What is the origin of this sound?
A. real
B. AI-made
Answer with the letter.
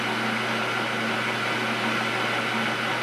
A